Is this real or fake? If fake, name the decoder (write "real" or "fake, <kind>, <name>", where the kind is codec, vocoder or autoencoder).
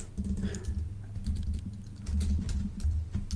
real